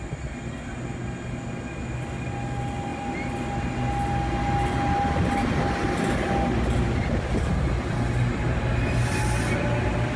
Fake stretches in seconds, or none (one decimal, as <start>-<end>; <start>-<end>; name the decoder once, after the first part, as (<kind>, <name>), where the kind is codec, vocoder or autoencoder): none